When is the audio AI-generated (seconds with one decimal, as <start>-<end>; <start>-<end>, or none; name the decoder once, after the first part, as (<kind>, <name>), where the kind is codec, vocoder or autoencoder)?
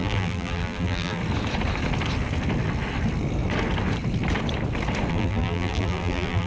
0.0-1.2 (vocoder, BigVGAN v2); 5.1-6.5